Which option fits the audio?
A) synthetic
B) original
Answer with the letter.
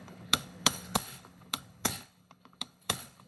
A